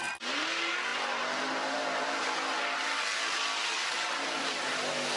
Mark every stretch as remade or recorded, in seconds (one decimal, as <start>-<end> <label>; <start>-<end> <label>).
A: 0.0-5.2 recorded

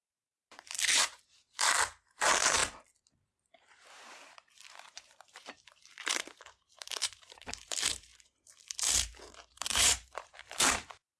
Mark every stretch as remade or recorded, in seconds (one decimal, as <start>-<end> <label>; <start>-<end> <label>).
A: 0.0-2.6 remade; 2.6-3.1 recorded; 3.1-11.2 remade

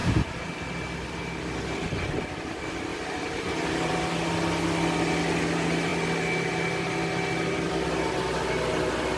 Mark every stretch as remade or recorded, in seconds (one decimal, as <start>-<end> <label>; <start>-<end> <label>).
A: 0.0-0.6 remade; 0.6-2.9 recorded; 2.9-4.0 remade; 4.0-9.2 recorded